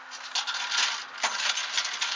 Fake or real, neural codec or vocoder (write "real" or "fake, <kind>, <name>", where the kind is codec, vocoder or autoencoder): real